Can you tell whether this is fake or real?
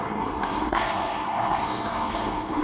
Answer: fake